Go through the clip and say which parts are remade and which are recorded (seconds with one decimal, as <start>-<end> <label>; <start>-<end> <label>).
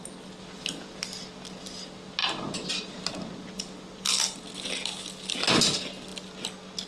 0.0-2.2 recorded; 2.2-2.7 remade; 2.7-6.9 recorded